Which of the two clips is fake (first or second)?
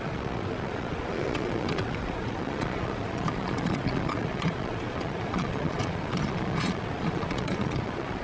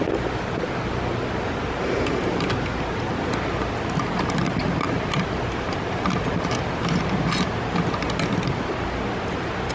first